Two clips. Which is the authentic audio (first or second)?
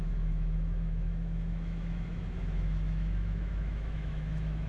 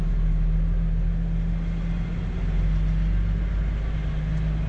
second